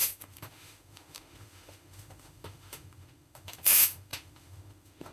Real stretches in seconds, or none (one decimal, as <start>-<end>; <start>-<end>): none